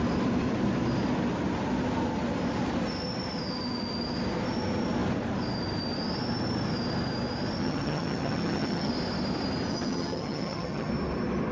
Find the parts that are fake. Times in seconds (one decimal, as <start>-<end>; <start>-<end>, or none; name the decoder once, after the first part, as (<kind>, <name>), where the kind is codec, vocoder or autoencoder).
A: 7.6-8.9 (vocoder, HiFi-GAN); 9.7-10.9